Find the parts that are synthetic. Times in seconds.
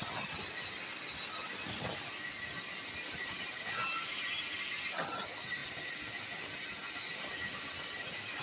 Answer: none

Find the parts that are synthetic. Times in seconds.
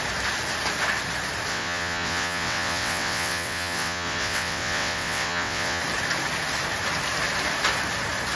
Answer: 1.5-5.8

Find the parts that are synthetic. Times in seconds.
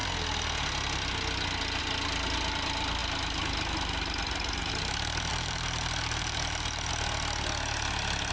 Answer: 5.3-6.9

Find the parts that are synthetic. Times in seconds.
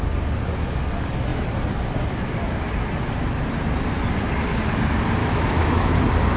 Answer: 5.2-5.9